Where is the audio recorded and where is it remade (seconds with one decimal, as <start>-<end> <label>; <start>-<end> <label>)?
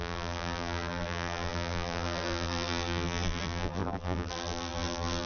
0.0-5.3 remade